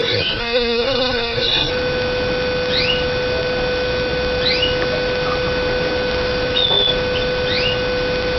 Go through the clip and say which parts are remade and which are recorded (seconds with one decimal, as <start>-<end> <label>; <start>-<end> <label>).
0.0-1.7 remade; 1.7-8.4 recorded